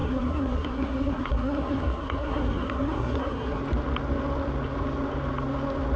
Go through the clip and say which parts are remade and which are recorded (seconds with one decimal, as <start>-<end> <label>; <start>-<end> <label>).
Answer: 0.0-3.6 remade; 3.6-6.0 recorded